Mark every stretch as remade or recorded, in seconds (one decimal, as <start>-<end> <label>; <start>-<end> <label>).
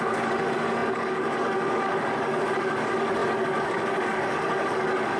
0.0-5.2 remade